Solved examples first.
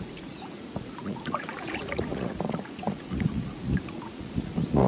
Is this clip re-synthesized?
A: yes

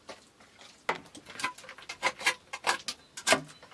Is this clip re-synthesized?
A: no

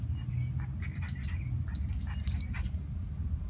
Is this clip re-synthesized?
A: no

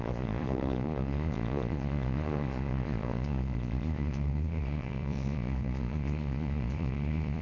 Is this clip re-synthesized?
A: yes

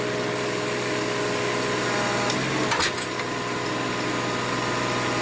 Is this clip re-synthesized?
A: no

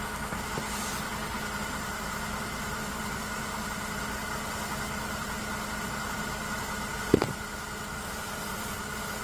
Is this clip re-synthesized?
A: no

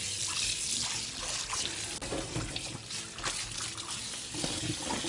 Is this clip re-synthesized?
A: no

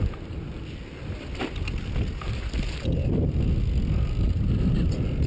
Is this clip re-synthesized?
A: no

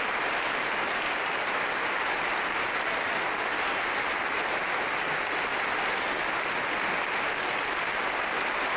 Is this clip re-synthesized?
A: no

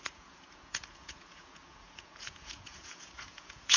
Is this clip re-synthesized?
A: yes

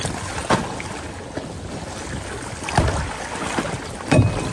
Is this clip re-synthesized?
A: no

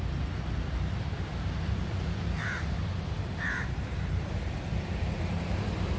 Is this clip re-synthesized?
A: yes